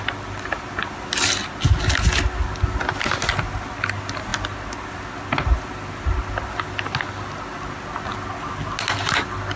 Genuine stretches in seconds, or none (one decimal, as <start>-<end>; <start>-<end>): 0.0-9.6